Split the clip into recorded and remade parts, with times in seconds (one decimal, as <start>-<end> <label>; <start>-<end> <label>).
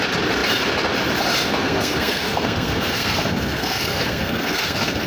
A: 0.0-1.6 recorded; 1.6-5.1 remade